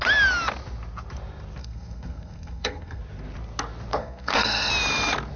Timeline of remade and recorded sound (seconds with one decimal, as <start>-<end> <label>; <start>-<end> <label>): 0.0-1.6 recorded; 1.6-3.0 remade; 3.0-3.9 recorded; 3.9-4.7 remade; 4.7-5.4 recorded